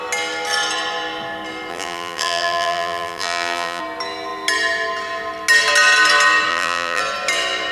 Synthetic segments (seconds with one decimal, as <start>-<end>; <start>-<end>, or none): 1.7-3.8; 6.5-7.0